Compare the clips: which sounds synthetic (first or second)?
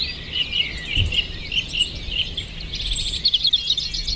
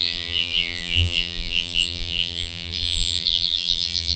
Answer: second